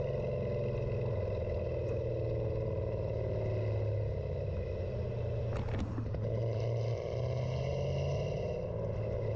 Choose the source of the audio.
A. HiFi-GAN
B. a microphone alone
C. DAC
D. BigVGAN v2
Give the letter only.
B